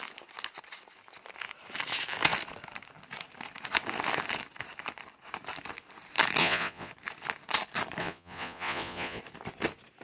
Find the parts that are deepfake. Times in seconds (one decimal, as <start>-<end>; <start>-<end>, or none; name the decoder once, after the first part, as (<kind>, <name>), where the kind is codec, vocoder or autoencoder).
6.4-6.9 (vocoder, Vocos); 8.0-9.2